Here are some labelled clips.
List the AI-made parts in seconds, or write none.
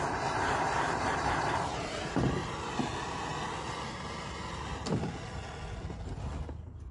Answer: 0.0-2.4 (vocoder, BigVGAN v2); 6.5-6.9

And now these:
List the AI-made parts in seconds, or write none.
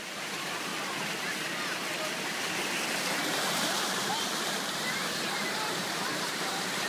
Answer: 0.0-0.7 (vocoder, BigVGAN v2); 3.5-6.9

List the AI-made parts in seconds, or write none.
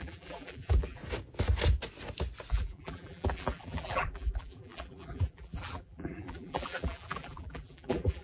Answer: 0.0-1.0 (vocoder, BigVGAN v2); 2.5-8.2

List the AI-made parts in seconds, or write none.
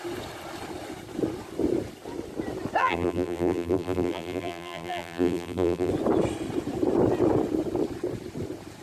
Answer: 2.8-5.9 (vocoder, BigVGAN v2)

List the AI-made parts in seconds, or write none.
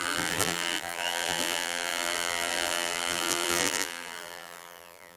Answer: 0.0-5.2 (vocoder, BigVGAN v2)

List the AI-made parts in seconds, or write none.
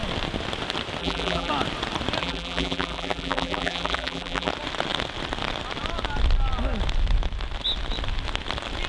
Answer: 1.0-1.5 (vocoder, BigVGAN v2); 2.2-4.5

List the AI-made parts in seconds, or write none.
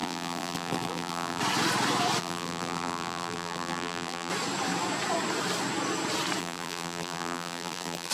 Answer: 0.0-1.4 (vocoder, BigVGAN v2); 2.2-4.3; 6.4-8.1